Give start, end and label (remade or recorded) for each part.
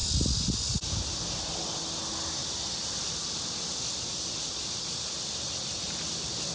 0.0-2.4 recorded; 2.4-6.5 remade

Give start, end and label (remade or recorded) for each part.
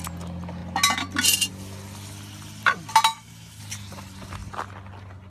0.0-3.1 recorded; 3.1-3.6 remade; 3.6-5.3 recorded